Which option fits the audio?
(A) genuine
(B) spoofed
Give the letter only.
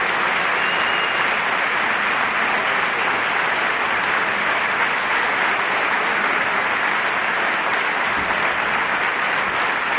A